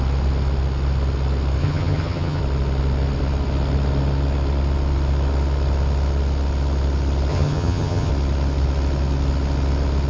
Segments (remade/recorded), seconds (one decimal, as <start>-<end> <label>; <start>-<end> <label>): 0.0-1.6 recorded; 1.6-2.4 remade; 2.4-7.3 recorded; 7.3-8.1 remade; 8.1-10.1 recorded